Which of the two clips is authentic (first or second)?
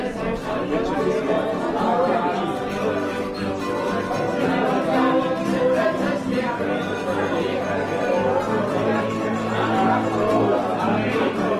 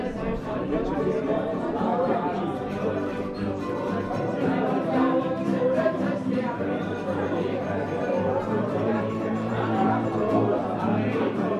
first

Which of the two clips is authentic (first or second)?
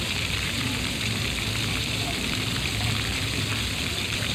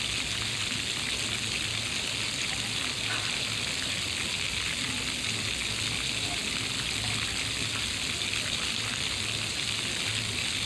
second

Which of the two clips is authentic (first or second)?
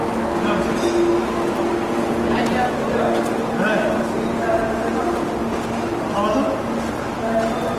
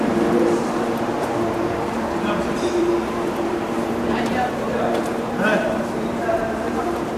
first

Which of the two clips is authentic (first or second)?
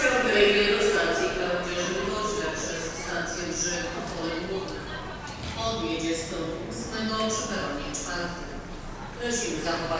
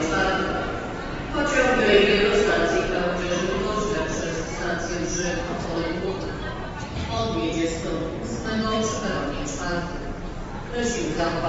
first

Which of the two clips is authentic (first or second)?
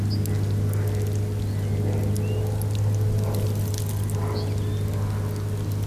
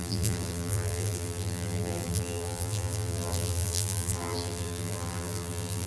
first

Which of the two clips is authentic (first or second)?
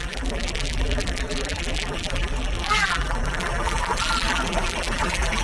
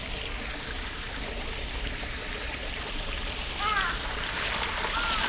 second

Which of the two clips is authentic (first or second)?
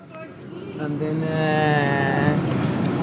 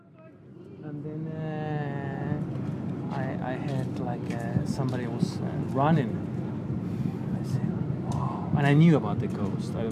first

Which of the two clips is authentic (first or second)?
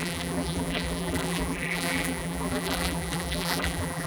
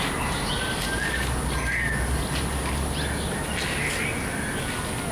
second